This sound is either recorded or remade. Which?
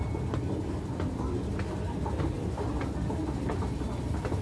recorded